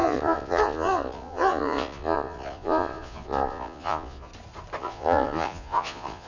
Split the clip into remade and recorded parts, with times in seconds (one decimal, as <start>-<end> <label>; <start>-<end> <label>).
0.0-4.3 remade; 4.3-4.8 recorded; 4.8-6.3 remade

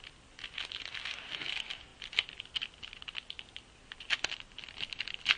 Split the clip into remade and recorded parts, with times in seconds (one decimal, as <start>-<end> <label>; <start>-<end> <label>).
0.0-5.4 recorded

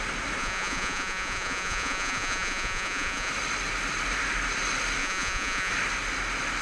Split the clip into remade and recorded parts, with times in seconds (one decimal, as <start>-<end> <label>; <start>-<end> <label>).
0.0-0.4 recorded; 0.4-3.3 remade; 3.3-5.0 recorded; 5.0-5.7 remade; 5.7-6.6 recorded

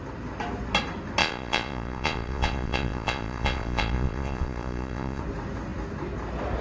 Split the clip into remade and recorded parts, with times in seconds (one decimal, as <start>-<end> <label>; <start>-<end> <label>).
0.0-1.2 recorded; 1.2-5.2 remade; 5.2-6.6 recorded